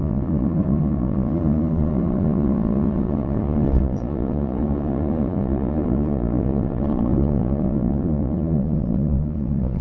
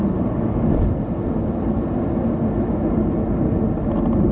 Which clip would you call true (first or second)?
second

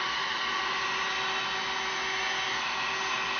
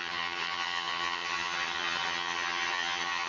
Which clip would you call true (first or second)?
first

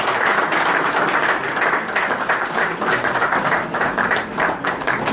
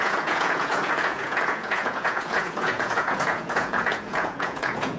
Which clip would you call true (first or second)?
first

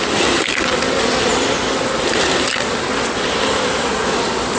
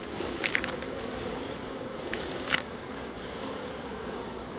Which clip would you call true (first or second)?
first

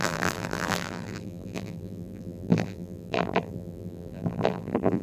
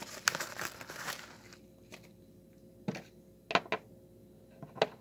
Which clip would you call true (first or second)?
second